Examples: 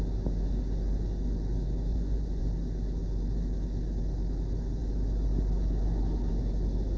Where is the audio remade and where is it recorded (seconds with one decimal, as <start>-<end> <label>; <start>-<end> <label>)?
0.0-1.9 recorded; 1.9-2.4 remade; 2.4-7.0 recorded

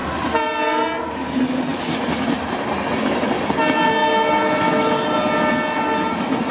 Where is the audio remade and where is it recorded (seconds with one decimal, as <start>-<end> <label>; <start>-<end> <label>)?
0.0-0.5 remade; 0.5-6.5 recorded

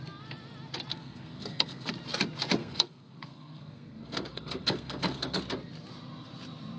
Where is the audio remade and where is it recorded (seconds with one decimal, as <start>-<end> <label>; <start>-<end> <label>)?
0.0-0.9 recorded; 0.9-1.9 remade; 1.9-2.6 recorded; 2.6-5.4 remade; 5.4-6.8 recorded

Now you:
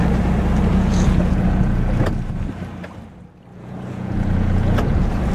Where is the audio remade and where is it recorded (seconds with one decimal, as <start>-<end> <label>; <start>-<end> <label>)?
0.0-0.7 recorded; 0.7-2.0 remade; 2.0-3.5 recorded; 3.5-5.3 remade

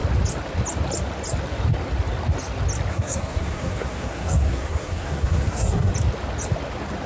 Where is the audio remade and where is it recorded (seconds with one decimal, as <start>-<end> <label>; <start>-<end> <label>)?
0.0-2.9 recorded; 2.9-5.9 remade; 5.9-7.1 recorded

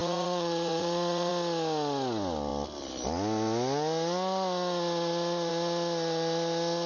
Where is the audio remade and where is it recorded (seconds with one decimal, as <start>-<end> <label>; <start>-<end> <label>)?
0.0-1.3 remade; 1.3-6.9 recorded